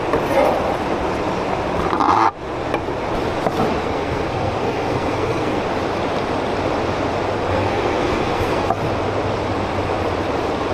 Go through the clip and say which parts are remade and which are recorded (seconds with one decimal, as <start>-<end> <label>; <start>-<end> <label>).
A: 0.0-3.8 recorded; 3.8-5.6 remade; 5.6-7.5 recorded; 7.5-8.7 remade; 8.7-10.7 recorded